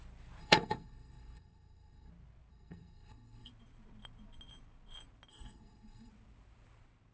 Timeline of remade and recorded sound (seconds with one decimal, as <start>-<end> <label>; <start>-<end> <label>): 0.0-0.4 recorded; 0.4-2.1 remade; 2.1-2.5 recorded; 2.5-3.5 remade; 3.5-5.3 recorded; 5.3-6.1 remade; 6.1-7.1 recorded